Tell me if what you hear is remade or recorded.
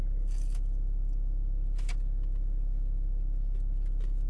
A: recorded